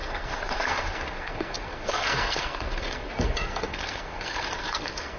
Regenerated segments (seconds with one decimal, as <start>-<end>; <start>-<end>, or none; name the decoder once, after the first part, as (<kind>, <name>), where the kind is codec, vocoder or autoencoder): 0.0-5.2 (codec, SNAC)